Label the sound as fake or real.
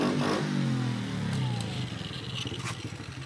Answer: real